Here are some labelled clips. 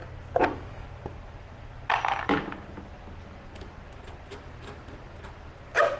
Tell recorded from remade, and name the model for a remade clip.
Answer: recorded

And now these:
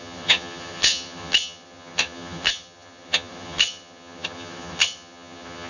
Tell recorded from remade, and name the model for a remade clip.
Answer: remade, vocoder, HiFi-GAN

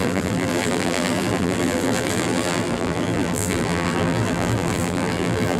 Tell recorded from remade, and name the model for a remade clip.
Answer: remade, vocoder, BigVGAN v2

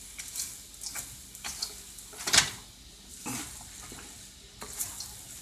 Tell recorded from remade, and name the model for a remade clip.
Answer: recorded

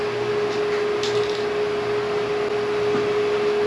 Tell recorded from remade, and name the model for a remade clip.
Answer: recorded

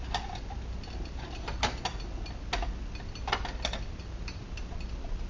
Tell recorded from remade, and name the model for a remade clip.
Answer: recorded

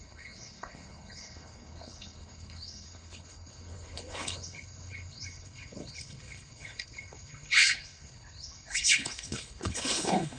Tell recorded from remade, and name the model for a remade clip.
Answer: remade, codec, HILCodec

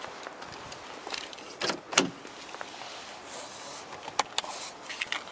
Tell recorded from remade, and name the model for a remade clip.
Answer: recorded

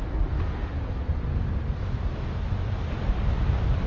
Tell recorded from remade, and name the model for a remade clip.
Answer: recorded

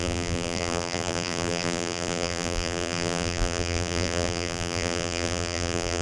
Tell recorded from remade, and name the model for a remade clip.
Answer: remade, vocoder, BigVGAN v2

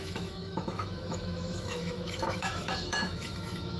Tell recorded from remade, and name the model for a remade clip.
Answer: remade, autoencoder, DAC-VAE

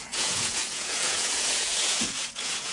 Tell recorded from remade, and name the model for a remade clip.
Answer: remade, vocoder, Vocos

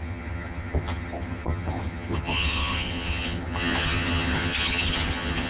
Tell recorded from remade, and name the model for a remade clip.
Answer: remade, vocoder, HiFi-GAN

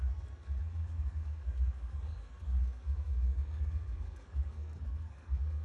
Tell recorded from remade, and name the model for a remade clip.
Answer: remade, codec, SNAC